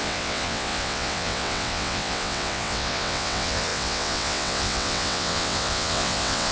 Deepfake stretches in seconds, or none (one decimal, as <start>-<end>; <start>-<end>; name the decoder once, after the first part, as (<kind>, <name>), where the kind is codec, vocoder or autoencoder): 0.0-6.5 (vocoder, WaveNeXt)